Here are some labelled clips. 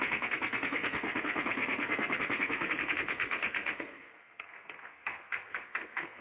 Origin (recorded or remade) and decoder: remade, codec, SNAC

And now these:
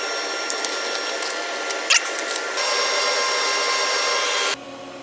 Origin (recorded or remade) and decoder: recorded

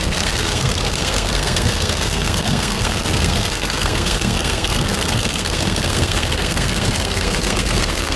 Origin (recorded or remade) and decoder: remade, codec, SNAC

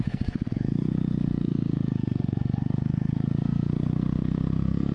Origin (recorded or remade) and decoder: remade, codec, SNAC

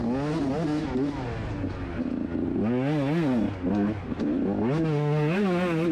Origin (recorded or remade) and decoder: recorded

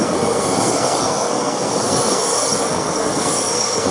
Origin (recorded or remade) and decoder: remade, codec, SNAC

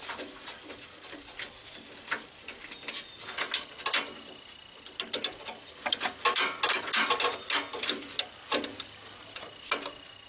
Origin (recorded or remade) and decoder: recorded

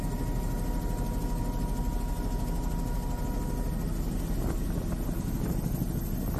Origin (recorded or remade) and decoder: recorded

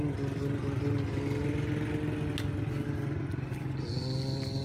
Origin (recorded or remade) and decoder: recorded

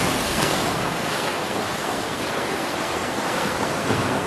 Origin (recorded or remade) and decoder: remade, codec, SNAC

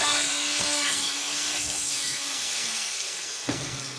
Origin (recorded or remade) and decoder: remade, codec, SNAC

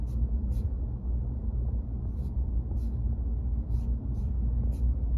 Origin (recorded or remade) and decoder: recorded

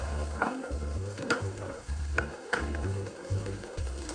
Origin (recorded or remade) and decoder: remade, codec, SNAC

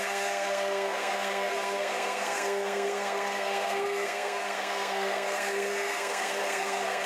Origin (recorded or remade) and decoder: remade, codec, SNAC